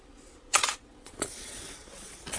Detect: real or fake fake